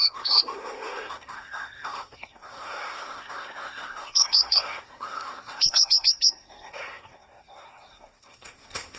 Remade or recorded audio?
remade